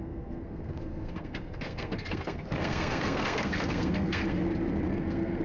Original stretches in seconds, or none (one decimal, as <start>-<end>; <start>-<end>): 4.4-4.9